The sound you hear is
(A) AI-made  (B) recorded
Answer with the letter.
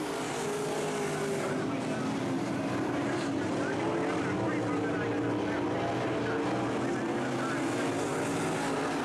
B